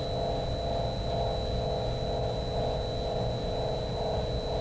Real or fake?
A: real